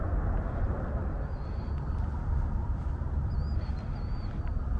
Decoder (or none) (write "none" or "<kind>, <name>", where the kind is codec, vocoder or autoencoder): none